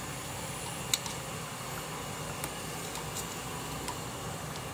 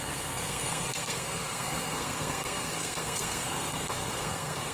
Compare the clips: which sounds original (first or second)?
first